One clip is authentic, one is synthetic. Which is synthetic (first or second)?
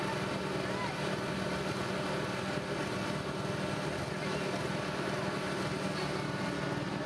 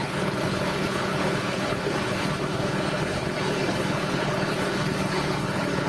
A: second